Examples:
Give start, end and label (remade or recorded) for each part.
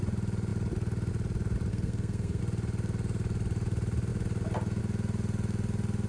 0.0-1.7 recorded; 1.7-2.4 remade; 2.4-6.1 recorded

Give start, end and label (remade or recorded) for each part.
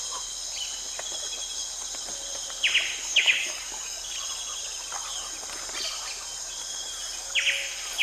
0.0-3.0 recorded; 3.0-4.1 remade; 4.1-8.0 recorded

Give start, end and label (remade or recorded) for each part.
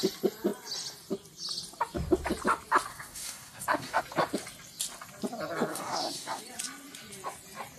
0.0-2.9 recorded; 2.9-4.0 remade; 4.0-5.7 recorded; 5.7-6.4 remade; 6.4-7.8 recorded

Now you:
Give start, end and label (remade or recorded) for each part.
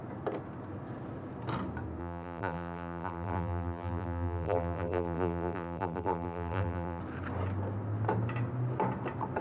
0.0-2.0 recorded; 2.0-7.0 remade; 7.0-9.4 recorded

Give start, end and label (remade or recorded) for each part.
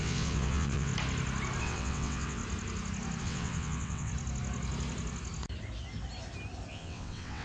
0.0-0.9 remade; 0.9-1.6 recorded; 1.6-2.4 remade; 2.4-3.2 recorded; 3.2-4.1 remade; 4.1-6.7 recorded; 6.7-7.4 remade